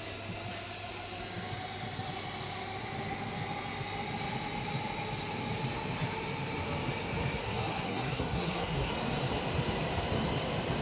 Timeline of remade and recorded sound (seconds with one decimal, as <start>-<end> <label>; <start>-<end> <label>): 0.0-7.4 recorded; 7.4-8.9 remade; 8.9-10.8 recorded